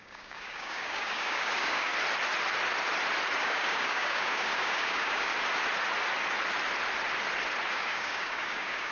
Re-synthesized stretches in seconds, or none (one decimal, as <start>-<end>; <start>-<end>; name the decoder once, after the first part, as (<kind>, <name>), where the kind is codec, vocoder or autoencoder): 0.0-1.9 (codec, DAC); 3.4-5.3; 7.7-8.9